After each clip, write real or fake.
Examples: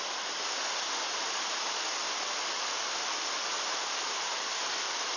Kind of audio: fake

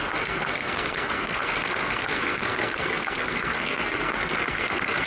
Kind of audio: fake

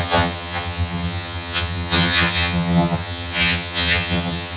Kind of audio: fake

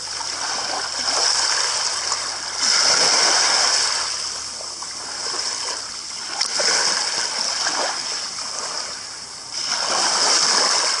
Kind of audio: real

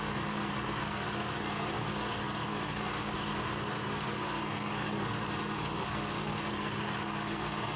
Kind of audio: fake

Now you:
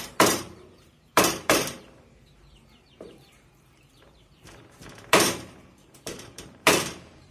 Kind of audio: fake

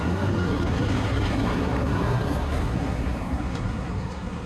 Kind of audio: fake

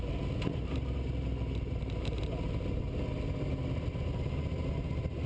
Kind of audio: real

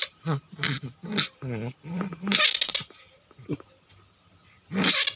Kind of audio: real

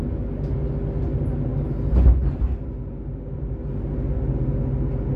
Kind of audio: real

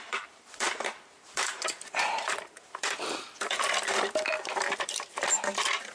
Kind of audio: fake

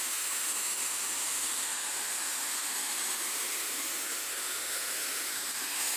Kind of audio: fake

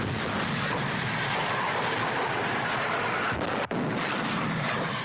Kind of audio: real